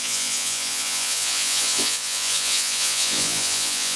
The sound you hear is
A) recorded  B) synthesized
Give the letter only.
B